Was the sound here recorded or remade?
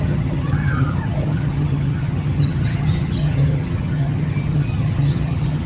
remade